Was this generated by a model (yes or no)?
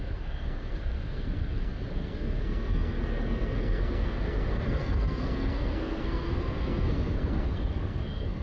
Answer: yes